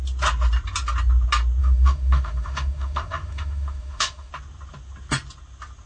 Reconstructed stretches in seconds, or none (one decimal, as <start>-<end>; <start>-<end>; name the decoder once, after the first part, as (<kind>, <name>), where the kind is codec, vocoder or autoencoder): 1.6-4.3 (autoencoder, DAC-VAE)